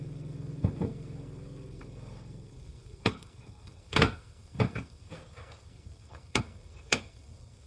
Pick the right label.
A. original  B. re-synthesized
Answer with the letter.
B